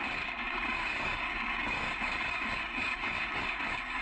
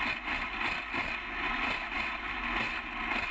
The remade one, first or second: first